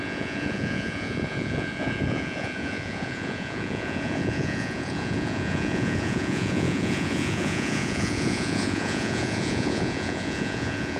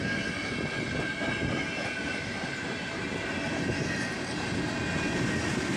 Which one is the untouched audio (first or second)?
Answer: second